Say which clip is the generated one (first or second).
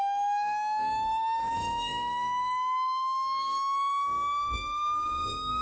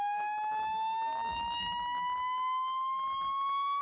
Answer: first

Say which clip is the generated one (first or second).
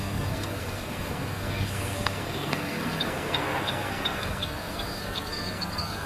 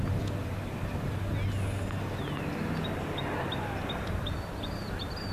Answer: first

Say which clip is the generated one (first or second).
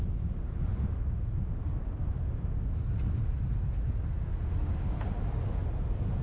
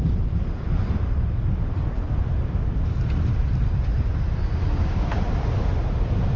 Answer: second